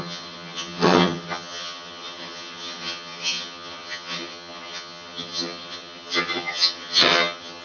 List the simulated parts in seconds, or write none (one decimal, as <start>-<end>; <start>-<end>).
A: 0.0-7.6